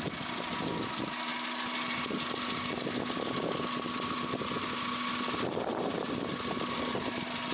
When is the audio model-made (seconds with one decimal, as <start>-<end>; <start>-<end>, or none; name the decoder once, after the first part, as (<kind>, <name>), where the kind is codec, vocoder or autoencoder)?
none